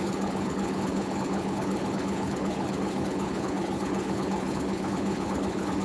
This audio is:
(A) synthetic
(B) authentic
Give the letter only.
A